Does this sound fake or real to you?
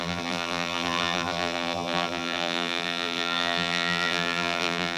fake